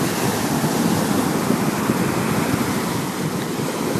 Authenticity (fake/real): real